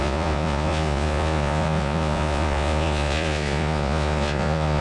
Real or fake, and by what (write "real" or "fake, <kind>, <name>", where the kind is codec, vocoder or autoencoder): fake, vocoder, Vocos